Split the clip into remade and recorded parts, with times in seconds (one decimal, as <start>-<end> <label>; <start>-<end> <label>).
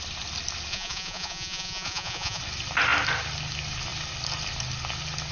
0.0-0.7 recorded; 0.7-2.4 remade; 2.4-5.3 recorded